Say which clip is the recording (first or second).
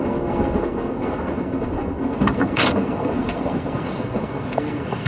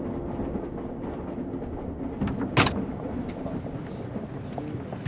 second